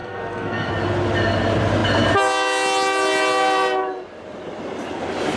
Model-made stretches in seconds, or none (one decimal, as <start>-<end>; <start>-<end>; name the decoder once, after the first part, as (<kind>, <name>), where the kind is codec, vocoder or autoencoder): 0.0-0.7 (codec, SNAC)